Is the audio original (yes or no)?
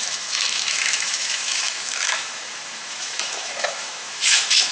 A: no